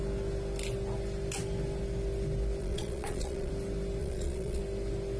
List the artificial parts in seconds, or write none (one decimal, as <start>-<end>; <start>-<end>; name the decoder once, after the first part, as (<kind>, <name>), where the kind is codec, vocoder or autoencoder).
2.6-3.5 (vocoder, Vocos); 4.0-4.6